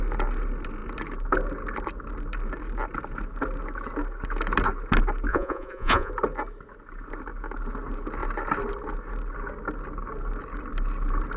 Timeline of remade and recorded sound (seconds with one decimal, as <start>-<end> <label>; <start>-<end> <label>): 0.0-5.3 recorded; 5.3-6.1 remade; 6.1-11.4 recorded